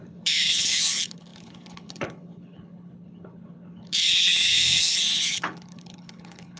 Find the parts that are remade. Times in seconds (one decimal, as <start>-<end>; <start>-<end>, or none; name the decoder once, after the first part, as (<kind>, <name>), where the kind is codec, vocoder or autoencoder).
0.0-6.6 (codec, HILCodec)